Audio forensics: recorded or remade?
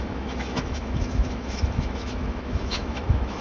remade